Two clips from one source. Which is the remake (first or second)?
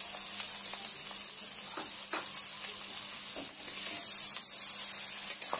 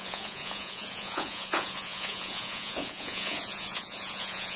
second